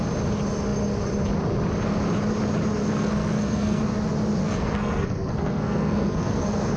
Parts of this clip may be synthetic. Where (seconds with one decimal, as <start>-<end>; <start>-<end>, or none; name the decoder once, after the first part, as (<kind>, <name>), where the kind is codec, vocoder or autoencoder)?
2.8-3.8 (codec, SNAC); 4.4-6.8